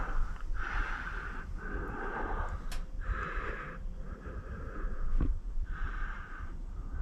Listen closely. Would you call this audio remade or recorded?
recorded